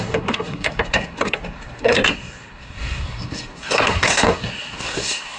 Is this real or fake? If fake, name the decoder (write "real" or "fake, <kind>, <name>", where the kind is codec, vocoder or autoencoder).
fake, codec, SNAC